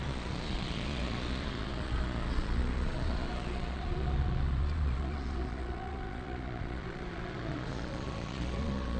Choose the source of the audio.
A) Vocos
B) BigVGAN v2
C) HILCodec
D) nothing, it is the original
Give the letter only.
A